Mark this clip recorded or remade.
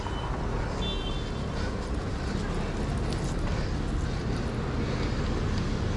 recorded